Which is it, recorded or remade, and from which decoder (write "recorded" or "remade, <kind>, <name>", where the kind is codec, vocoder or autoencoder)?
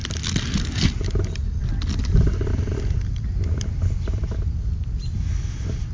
recorded